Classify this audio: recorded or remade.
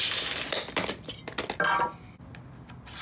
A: recorded